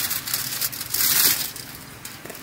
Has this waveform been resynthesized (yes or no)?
no